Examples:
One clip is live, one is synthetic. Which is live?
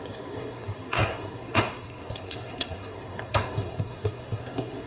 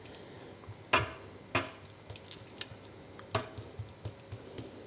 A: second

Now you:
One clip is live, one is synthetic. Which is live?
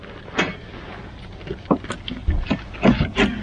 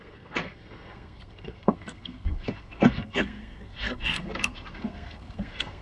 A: first